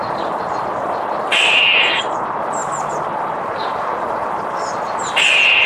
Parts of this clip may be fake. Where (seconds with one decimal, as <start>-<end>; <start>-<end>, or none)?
none